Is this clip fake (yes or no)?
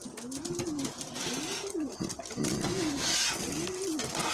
no